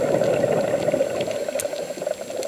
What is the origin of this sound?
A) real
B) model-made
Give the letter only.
A